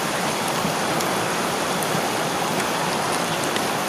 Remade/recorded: recorded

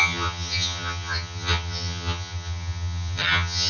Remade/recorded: remade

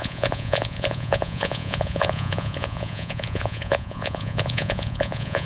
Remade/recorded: remade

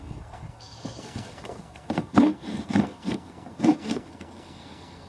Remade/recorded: remade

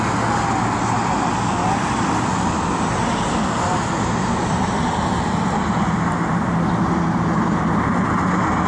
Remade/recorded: recorded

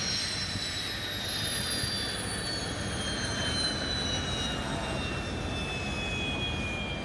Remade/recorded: recorded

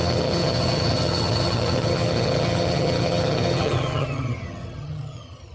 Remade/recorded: remade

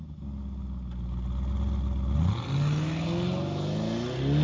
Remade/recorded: recorded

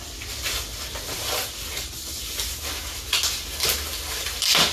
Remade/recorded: recorded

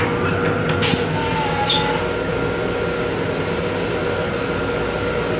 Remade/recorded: recorded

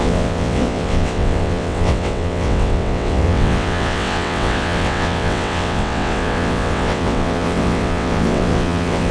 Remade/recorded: remade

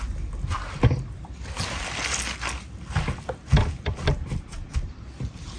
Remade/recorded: recorded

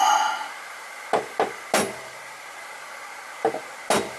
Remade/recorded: recorded